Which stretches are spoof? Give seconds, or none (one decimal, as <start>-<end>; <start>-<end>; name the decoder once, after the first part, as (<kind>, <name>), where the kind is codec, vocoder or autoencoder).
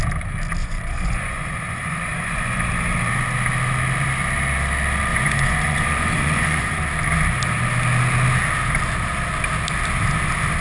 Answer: 0.6-2.6 (vocoder, Vocos); 5.1-6.8